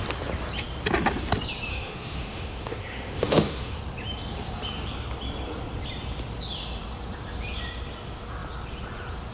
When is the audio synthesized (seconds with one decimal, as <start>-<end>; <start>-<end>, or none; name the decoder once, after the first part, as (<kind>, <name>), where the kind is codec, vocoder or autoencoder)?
1.7-3.8 (autoencoder, DAC-VAE)

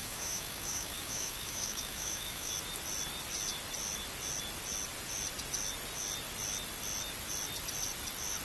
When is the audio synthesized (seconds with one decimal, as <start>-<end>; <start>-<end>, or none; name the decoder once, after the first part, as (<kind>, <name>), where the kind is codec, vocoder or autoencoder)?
0.0-2.5 (autoencoder, DAC-VAE)

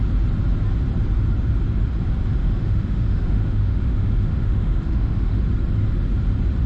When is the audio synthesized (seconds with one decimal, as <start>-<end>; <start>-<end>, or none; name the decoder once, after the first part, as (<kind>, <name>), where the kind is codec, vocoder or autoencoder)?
2.4-5.4 (autoencoder, DAC-VAE)

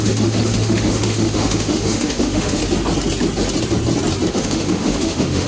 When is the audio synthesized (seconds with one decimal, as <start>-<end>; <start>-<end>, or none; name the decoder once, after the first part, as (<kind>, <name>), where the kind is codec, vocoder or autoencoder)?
0.0-2.6 (autoencoder, DAC-VAE); 4.3-5.5

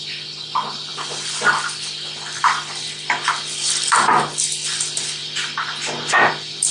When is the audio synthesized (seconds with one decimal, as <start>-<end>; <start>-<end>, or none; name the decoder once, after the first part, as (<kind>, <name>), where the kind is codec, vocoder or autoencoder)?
none

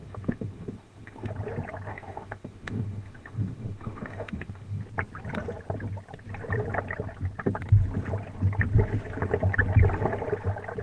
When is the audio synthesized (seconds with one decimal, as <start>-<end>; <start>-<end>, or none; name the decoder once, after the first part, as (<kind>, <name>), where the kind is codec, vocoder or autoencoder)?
0.0-1.3 (autoencoder, DAC-VAE); 1.9-4.8

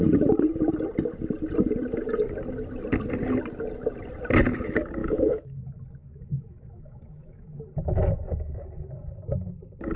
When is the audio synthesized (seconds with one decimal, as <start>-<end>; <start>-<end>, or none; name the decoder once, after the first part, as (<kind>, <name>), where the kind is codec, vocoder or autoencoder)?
5.0-5.6 (autoencoder, DAC-VAE); 6.0-7.6